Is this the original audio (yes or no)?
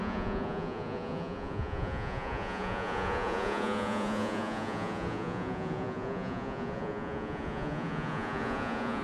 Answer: no